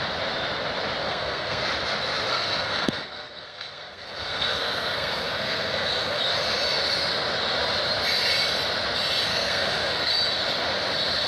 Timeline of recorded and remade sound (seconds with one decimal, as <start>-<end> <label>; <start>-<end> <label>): 0.0-1.0 recorded; 1.0-1.6 remade; 1.6-2.3 recorded; 2.3-6.2 remade; 6.2-9.3 recorded; 9.3-10.1 remade; 10.1-11.3 recorded